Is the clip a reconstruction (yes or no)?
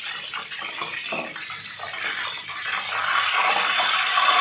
no